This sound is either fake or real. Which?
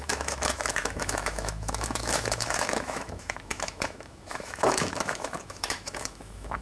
fake